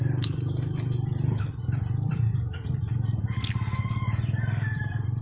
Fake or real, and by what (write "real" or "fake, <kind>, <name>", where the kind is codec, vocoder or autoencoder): fake, vocoder, BigVGAN v2